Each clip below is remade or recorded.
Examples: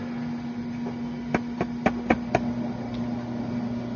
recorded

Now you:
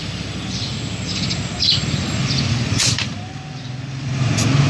remade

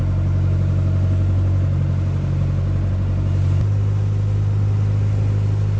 recorded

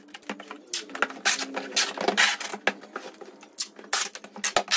recorded